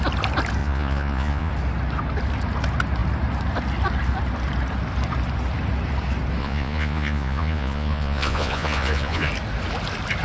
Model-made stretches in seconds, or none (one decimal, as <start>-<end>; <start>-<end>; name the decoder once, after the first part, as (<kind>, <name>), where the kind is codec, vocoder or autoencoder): 0.6-1.5 (vocoder, Vocos); 6.4-9.3